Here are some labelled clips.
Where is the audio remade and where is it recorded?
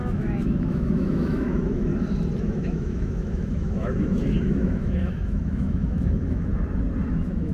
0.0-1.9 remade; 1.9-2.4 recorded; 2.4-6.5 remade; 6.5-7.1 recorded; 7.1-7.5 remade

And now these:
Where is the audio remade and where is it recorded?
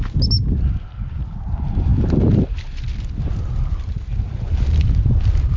0.0-5.6 recorded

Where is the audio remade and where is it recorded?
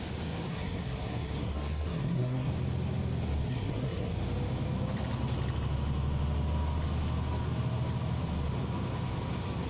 0.0-0.5 recorded; 0.5-2.5 remade; 2.5-3.5 recorded; 3.5-4.1 remade; 4.1-9.7 recorded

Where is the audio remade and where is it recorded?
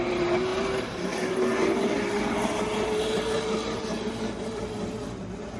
0.0-5.6 recorded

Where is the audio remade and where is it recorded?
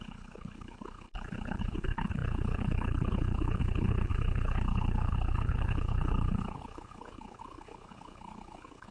0.0-8.9 remade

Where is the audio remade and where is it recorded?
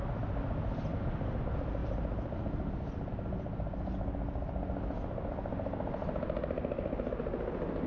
0.0-0.9 recorded; 0.9-1.4 remade; 1.4-1.8 recorded; 1.8-3.1 remade; 3.1-6.0 recorded; 6.0-7.1 remade; 7.1-7.9 recorded